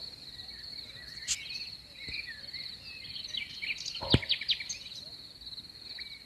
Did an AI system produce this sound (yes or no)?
no